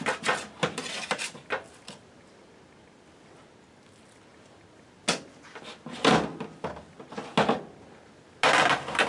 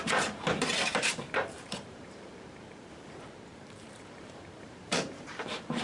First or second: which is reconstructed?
second